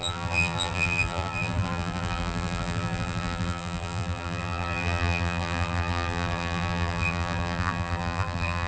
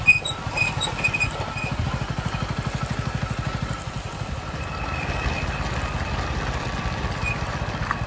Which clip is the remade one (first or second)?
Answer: first